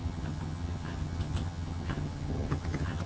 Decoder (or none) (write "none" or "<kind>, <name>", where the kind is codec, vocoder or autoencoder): vocoder, HiFi-GAN